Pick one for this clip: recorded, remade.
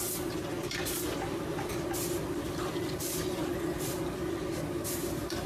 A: recorded